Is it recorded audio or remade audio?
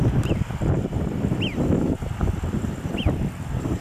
recorded